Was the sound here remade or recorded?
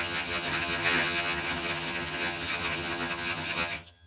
remade